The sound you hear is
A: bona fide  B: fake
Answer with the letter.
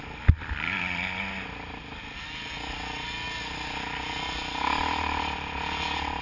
A